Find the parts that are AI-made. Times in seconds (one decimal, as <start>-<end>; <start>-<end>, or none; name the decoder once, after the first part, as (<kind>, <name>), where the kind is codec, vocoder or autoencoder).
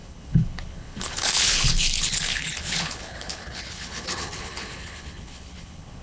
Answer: 0.0-6.0 (codec, HILCodec)